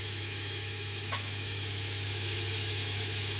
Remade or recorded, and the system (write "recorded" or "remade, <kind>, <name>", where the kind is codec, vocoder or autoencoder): remade, autoencoder, DAC-VAE